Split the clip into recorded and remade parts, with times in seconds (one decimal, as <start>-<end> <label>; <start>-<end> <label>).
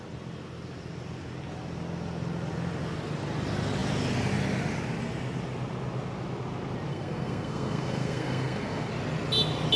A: 0.0-6.9 recorded; 6.9-8.9 remade; 8.9-9.8 recorded